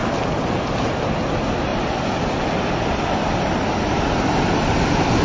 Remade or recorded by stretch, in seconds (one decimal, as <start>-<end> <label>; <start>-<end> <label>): 0.0-5.2 recorded